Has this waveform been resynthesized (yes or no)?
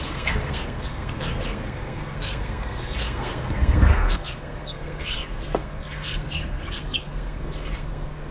yes